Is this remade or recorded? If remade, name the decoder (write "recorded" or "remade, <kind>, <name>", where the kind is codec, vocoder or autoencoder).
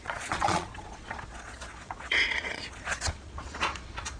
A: remade, vocoder, Vocos